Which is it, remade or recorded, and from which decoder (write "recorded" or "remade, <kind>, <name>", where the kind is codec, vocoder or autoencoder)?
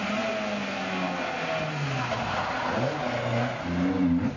recorded